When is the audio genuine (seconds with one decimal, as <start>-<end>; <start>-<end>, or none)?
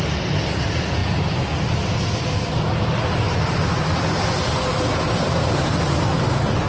0.0-6.7